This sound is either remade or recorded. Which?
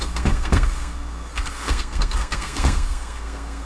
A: remade